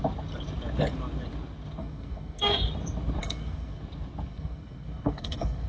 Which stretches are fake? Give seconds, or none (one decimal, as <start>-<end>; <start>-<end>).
1.8-2.7; 3.2-3.8; 4.3-5.7